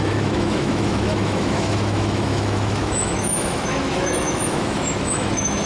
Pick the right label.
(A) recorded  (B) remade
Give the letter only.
B